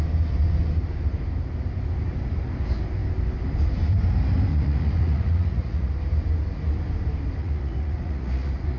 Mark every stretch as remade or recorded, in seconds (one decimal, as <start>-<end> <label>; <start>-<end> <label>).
0.0-4.5 recorded; 4.5-5.9 remade; 5.9-7.4 recorded; 7.4-8.8 remade